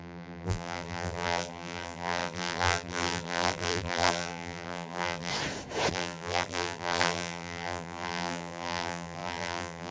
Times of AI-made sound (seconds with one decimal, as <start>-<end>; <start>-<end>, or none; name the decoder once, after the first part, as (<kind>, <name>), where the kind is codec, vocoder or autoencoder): 0.0-5.3 (vocoder, BigVGAN v2); 5.9-9.9